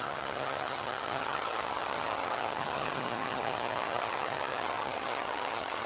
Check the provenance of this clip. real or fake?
fake